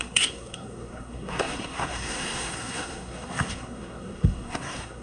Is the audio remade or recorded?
remade